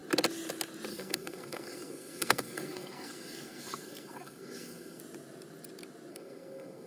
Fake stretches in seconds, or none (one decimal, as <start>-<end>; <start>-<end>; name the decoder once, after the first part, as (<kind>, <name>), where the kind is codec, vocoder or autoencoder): 0.9-5.0 (codec, SNAC); 6.1-6.9